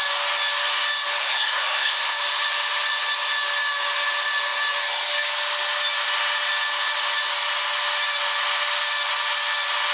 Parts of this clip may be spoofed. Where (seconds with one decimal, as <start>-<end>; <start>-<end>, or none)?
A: 1.2-2.1